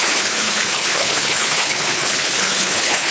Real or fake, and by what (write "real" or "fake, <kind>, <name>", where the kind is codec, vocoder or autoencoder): fake, codec, HILCodec